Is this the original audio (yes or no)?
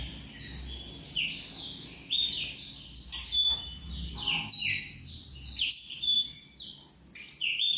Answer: yes